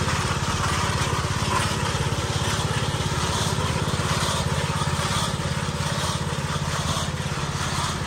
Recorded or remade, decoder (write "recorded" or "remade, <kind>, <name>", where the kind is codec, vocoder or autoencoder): recorded